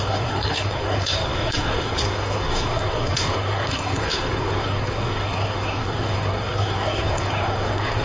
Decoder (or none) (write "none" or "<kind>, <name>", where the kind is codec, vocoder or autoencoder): codec, SNAC